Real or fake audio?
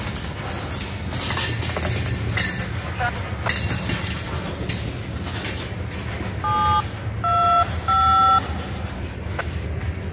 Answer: real